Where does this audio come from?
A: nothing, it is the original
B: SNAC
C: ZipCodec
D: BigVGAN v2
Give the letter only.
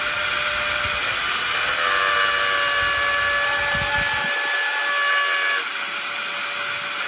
A